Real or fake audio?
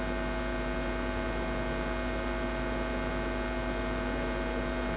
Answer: real